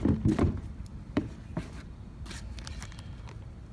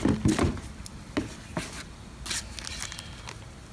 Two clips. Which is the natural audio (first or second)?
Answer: second